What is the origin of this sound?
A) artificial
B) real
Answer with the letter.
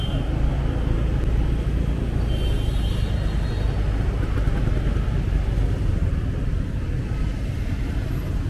B